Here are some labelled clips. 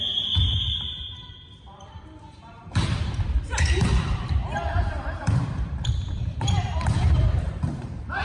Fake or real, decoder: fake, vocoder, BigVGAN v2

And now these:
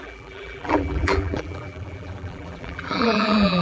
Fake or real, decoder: fake, vocoder, BigVGAN v2